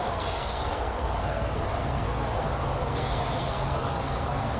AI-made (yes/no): yes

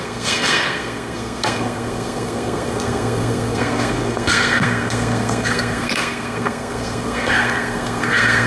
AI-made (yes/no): yes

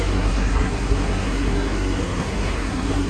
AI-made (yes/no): yes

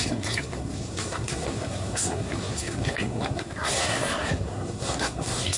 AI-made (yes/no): yes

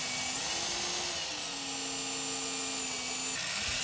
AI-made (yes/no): no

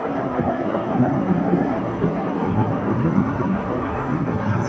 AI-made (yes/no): yes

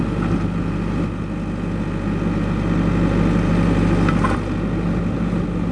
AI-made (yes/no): no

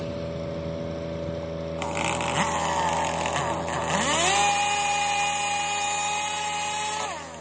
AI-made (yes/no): no